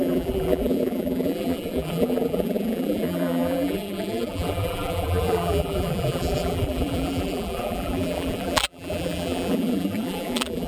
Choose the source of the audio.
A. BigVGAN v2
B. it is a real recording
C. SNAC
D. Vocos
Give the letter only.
A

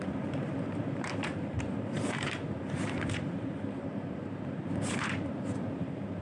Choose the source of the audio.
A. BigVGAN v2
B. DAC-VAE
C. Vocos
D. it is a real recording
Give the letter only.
A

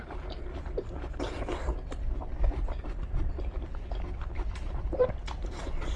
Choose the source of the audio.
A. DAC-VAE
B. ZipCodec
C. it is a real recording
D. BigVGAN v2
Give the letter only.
D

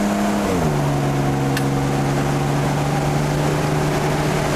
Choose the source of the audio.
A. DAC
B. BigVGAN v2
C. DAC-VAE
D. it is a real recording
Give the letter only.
D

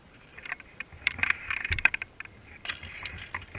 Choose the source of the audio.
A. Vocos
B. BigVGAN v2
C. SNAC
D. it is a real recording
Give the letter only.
B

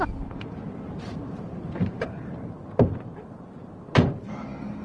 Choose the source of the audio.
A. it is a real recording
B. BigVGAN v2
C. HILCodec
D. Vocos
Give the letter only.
B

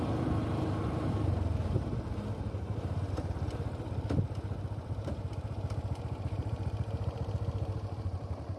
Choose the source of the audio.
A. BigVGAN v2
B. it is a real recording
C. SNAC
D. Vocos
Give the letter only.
A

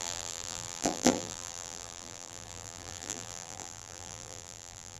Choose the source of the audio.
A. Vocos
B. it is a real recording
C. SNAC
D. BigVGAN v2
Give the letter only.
D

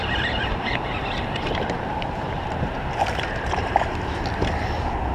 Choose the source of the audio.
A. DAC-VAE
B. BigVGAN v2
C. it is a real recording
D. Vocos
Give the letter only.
B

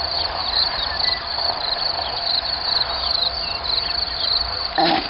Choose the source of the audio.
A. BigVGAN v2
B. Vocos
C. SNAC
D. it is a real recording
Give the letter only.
A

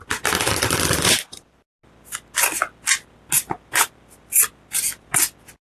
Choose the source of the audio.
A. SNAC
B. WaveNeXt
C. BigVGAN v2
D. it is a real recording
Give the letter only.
D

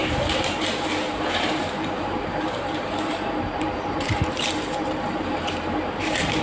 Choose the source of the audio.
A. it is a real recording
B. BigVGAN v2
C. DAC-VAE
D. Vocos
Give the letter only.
B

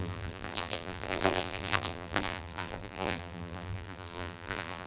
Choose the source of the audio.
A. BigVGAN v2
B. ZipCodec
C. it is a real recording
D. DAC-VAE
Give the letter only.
A